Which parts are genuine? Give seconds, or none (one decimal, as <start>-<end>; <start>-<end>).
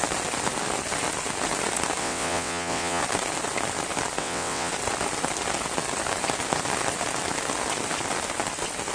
0.0-2.0; 3.0-4.2; 4.7-8.9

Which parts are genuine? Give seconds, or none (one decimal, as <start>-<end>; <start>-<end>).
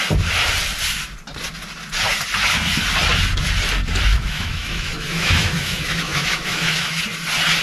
0.0-4.1; 7.0-7.6